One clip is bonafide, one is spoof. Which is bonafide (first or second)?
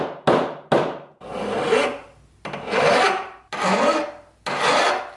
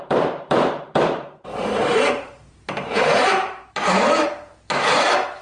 first